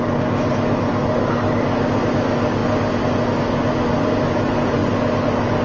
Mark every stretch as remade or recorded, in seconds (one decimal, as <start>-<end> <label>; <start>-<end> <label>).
0.0-5.6 recorded